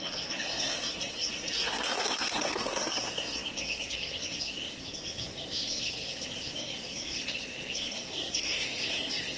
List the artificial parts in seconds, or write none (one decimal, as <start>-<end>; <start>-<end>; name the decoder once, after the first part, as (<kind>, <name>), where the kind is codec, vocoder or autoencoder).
0.0-9.4 (codec, SNAC)